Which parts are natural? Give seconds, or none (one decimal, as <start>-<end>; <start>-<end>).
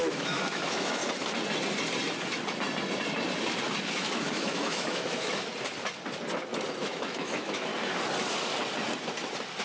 1.0-3.9; 5.5-6.8; 7.7-9.6